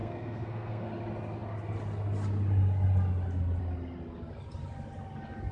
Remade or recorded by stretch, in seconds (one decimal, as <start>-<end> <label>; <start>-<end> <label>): 0.0-0.9 remade; 0.9-5.5 recorded